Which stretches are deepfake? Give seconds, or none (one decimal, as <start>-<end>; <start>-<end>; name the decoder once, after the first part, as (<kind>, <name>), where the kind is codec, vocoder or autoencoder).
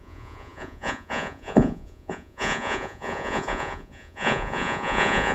0.0-5.3 (vocoder, Vocos)